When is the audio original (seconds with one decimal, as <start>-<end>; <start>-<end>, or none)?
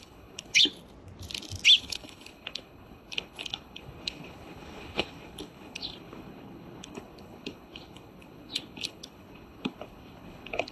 0.7-1.8